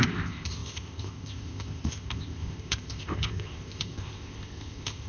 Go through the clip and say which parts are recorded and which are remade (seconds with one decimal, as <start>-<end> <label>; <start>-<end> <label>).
0.0-5.1 remade